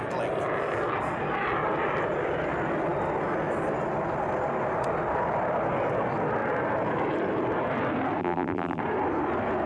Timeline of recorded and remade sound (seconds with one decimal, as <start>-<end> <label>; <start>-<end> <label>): 0.0-8.2 recorded; 8.2-8.8 remade; 8.8-9.7 recorded